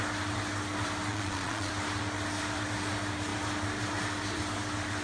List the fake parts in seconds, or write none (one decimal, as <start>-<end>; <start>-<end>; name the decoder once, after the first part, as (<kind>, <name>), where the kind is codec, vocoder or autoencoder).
1.1-1.7 (vocoder, Vocos)